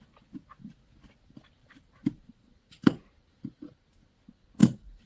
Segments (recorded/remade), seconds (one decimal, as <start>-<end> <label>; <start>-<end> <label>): 0.0-1.6 recorded; 1.6-3.1 remade; 3.1-4.6 recorded; 4.6-5.1 remade